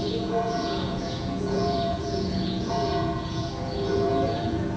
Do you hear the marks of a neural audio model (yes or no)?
yes